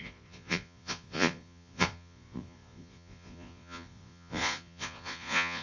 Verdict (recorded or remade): remade